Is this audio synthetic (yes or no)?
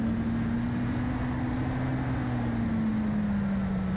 no